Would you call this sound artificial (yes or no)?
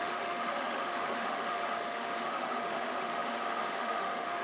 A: yes